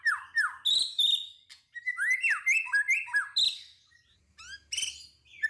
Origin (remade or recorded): recorded